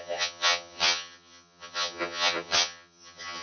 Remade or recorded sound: remade